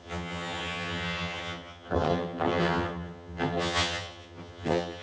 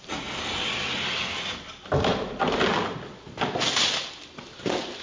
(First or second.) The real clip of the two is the second